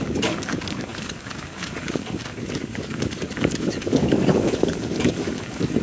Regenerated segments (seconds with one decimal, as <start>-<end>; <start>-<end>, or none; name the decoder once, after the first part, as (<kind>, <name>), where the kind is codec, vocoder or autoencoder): 0.0-5.8 (codec, DAC)